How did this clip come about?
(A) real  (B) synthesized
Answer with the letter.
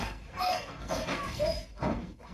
B